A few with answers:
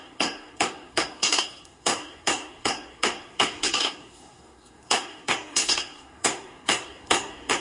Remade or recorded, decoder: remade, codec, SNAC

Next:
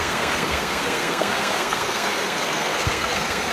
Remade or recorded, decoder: remade, codec, SNAC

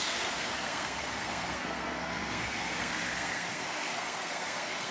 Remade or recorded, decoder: remade, codec, SNAC